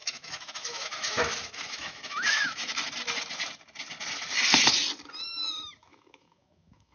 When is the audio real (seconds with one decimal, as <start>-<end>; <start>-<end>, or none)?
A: 2.7-5.8